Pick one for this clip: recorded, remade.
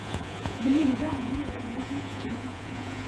remade